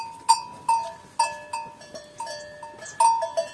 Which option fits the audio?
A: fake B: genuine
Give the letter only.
B